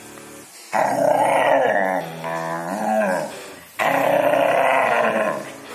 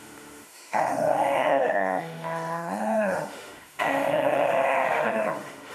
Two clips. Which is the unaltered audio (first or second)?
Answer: first